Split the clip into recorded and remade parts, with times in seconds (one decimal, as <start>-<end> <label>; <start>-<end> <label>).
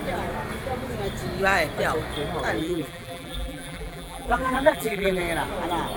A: 0.0-2.6 recorded; 2.6-5.2 remade; 5.2-6.0 recorded